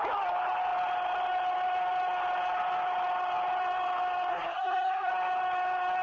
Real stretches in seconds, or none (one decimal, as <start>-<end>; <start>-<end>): 0.0-4.3; 5.1-6.0